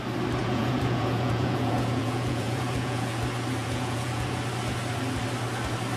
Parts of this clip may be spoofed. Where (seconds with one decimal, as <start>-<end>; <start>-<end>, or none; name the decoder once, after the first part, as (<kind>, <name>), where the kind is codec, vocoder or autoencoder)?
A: 0.4-3.2 (vocoder, Vocos); 3.6-4.4